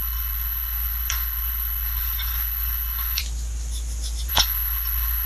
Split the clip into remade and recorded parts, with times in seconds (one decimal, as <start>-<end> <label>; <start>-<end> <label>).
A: 0.0-3.2 remade; 3.2-4.3 recorded; 4.3-5.3 remade